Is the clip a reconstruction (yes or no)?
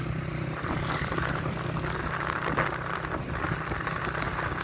yes